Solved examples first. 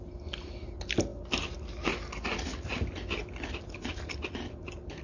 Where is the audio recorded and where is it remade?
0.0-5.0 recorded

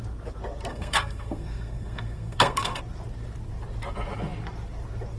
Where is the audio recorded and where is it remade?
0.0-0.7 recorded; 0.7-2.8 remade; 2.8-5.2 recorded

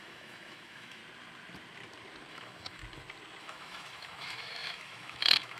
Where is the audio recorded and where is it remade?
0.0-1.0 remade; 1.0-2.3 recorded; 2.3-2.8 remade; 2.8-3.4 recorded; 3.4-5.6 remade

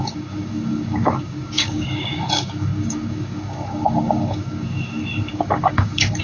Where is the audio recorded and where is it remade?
0.0-6.2 remade

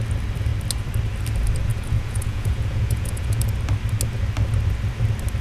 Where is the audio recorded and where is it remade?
0.0-1.7 recorded; 1.7-3.4 remade; 3.4-5.4 recorded